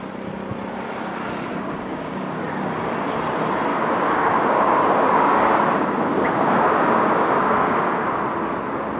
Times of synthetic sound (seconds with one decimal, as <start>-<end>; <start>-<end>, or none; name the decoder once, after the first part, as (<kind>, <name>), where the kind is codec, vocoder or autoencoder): 1.5-2.4 (codec, DAC); 3.7-8.2